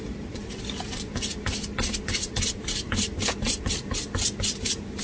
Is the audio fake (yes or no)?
no